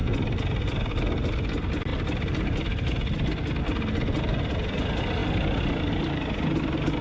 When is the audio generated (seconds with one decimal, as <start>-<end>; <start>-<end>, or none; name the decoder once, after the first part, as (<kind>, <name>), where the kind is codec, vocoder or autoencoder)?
none